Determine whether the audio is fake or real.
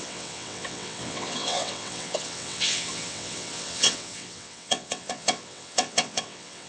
fake